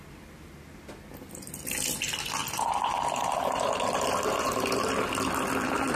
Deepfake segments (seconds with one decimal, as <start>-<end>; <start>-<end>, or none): 2.4-5.3